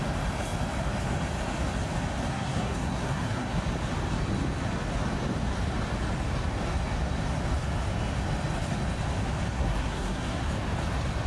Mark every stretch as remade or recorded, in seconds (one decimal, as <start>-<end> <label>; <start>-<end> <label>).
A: 0.0-2.3 recorded; 2.3-3.6 remade; 3.6-9.5 recorded; 9.5-10.5 remade; 10.5-11.3 recorded